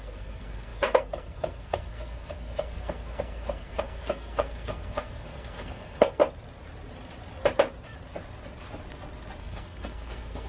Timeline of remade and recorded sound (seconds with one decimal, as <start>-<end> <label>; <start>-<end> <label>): 0.0-6.2 remade; 6.2-9.4 recorded; 9.4-10.5 remade